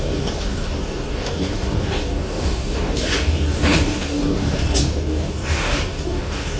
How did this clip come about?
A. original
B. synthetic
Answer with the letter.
B